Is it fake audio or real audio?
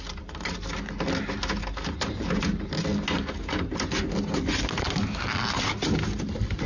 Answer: real